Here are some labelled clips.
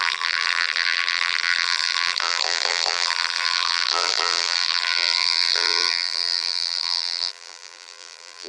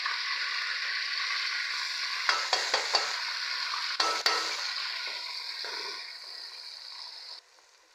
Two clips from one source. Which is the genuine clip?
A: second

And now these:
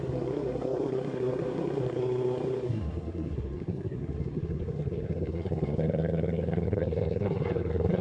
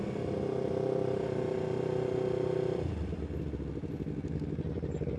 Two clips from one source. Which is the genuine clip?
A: second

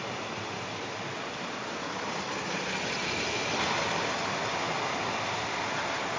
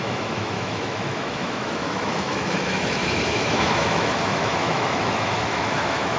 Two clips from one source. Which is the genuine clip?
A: first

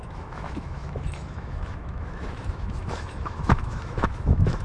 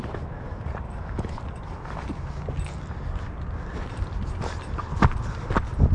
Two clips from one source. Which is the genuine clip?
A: second